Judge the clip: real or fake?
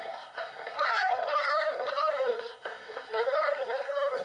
fake